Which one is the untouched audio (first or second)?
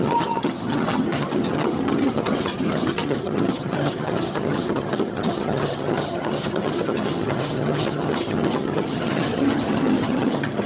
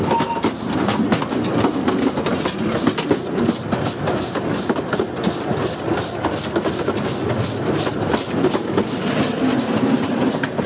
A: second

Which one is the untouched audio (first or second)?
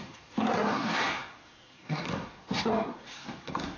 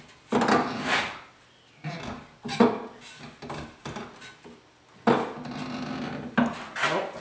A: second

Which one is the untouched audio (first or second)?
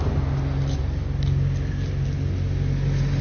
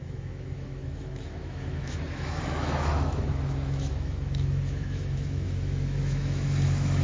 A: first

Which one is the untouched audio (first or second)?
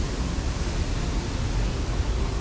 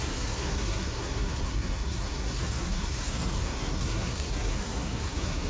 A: first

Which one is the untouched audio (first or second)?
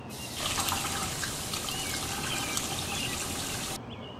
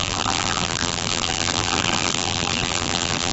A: first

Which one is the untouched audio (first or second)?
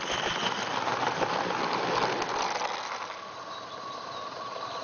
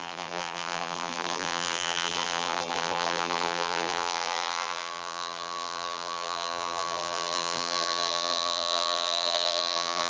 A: first